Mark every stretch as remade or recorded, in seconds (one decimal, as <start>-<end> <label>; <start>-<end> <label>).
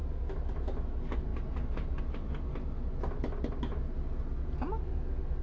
0.0-5.4 recorded